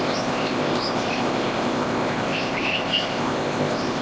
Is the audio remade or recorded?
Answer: remade